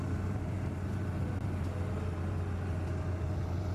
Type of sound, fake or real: real